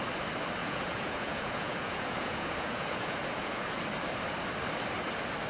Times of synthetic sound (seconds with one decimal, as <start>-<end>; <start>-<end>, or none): 0.6-3.8